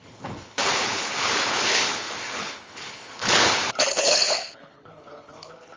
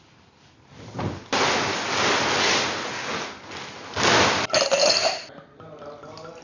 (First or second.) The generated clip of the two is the first